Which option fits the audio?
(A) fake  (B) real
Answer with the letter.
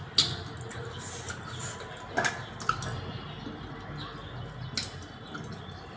B